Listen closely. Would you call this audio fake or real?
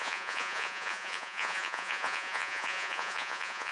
fake